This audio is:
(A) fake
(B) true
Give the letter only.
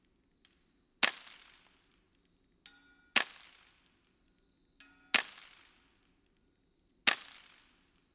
B